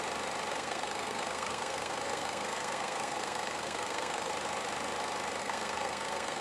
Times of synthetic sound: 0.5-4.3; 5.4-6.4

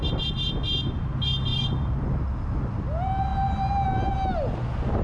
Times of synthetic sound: none

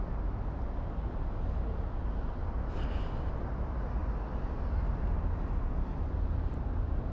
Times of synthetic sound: none

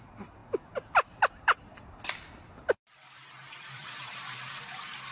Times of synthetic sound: 0.0-0.4; 1.1-5.1

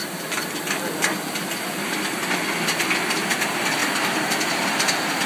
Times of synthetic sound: none

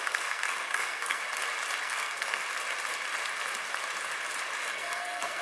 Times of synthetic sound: 0.0-1.2; 1.8-2.4; 4.7-5.4

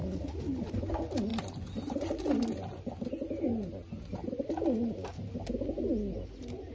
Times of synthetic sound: none